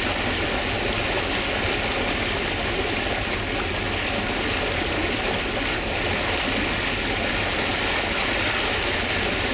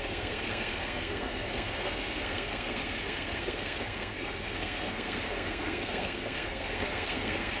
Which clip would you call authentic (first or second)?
first